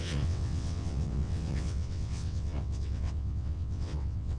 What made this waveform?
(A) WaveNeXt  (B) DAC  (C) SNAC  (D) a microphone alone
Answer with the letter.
A